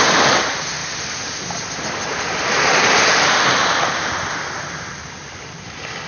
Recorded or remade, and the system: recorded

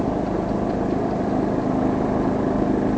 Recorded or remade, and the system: recorded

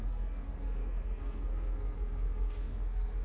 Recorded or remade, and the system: remade, codec, SNAC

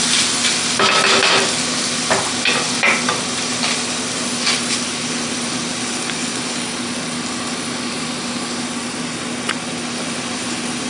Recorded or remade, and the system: recorded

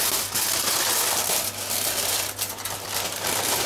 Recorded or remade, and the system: recorded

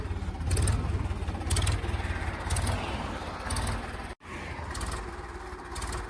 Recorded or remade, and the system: recorded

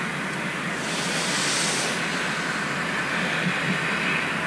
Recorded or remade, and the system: recorded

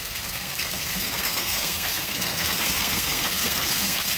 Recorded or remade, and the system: remade, codec, SNAC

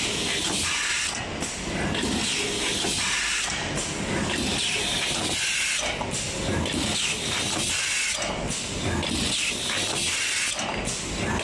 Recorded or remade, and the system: recorded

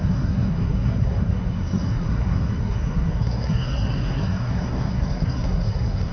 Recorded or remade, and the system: remade, codec, SNAC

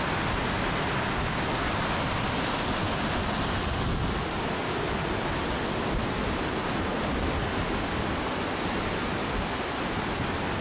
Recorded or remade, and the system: recorded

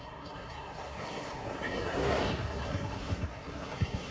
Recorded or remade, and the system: remade, codec, SNAC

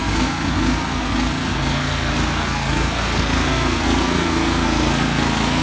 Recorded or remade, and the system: remade, codec, SNAC